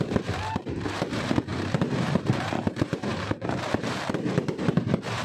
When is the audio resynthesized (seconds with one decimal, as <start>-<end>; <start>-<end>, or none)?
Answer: 0.0-5.2